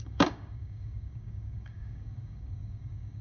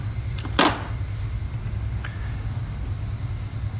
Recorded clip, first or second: second